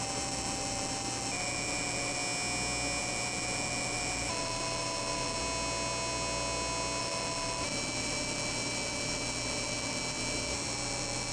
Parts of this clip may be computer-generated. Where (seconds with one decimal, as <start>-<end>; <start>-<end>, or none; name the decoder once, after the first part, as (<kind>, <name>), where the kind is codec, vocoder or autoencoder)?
0.0-2.2 (vocoder, BigVGAN v2); 3.0-5.4; 7.0-11.3